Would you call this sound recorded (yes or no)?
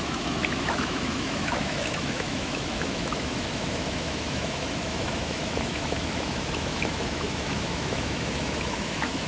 no